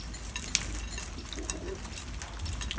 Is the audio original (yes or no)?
yes